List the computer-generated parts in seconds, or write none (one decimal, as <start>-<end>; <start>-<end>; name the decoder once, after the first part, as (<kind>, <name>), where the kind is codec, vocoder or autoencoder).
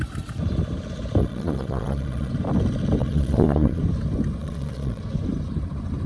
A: 1.2-2.3 (vocoder, Vocos); 3.0-3.8; 4.4-5.0